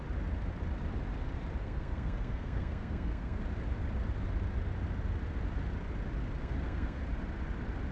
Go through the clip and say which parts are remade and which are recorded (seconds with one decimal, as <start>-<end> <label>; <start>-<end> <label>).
0.0-1.6 recorded; 1.6-3.4 remade; 3.4-6.4 recorded; 6.4-7.0 remade; 7.0-7.9 recorded